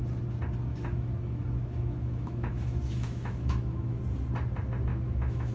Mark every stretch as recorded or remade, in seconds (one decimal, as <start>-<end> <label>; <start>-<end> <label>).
0.0-0.7 recorded; 0.7-4.0 remade; 4.0-4.9 recorded; 4.9-5.5 remade